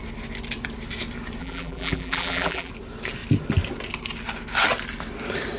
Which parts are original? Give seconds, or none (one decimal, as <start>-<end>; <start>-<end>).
0.0-1.4; 2.7-5.6